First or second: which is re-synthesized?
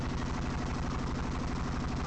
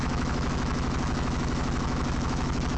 second